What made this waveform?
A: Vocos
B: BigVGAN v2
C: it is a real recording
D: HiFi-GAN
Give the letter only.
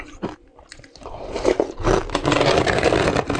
B